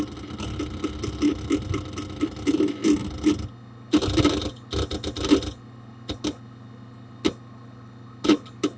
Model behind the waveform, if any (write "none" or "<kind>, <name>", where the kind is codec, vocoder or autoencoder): none